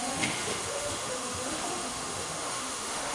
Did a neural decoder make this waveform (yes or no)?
yes